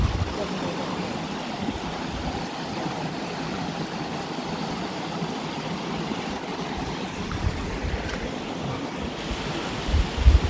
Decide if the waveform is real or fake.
real